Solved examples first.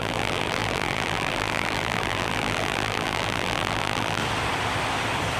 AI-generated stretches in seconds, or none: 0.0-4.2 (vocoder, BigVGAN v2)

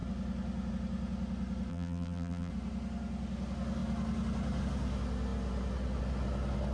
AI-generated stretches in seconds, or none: 1.7-2.5 (vocoder, BigVGAN v2)

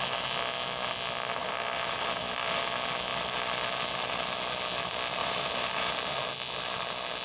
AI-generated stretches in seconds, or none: 1.4-2.6 (vocoder, BigVGAN v2); 5.2-6.3